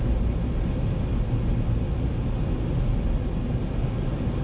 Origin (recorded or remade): recorded